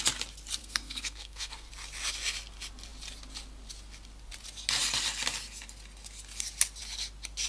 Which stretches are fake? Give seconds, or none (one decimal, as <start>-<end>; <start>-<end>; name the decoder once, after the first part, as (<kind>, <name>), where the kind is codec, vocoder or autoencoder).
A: 0.6-1.7 (codec, SNAC)